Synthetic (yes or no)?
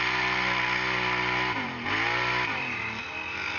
no